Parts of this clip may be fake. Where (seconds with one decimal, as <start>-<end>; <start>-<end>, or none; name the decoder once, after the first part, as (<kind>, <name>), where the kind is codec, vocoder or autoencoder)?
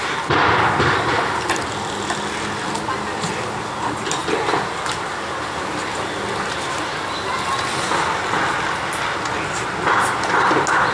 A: none